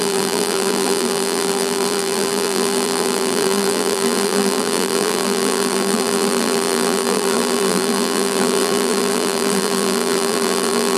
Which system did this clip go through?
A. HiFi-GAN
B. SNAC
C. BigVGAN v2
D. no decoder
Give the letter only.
C